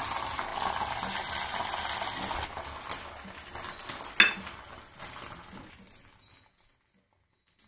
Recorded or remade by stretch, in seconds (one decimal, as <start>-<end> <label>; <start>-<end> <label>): 0.0-7.7 recorded